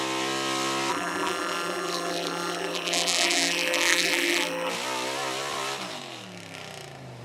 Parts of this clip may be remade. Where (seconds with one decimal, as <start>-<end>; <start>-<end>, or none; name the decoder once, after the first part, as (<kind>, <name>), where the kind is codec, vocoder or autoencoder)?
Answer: 0.9-4.7 (vocoder, BigVGAN v2)